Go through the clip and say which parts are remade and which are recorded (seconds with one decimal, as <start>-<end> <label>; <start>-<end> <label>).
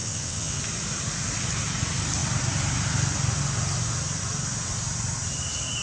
0.0-0.6 remade; 0.6-5.8 recorded